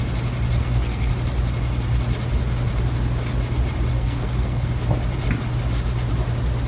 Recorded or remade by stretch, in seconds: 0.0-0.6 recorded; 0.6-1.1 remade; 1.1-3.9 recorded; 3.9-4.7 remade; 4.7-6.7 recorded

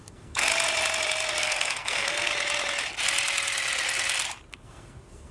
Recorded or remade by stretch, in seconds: 0.0-0.5 remade; 0.5-1.4 recorded; 1.4-2.3 remade; 2.3-4.5 recorded; 4.5-5.3 remade

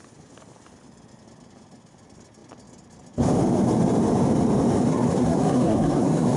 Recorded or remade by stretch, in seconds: 0.0-4.9 recorded; 4.9-6.4 remade